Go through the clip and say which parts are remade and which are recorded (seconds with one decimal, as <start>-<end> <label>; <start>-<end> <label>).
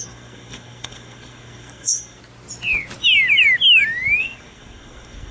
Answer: 0.0-2.2 remade; 2.2-4.2 recorded; 4.2-5.3 remade